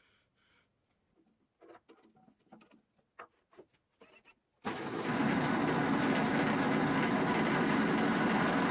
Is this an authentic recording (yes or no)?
yes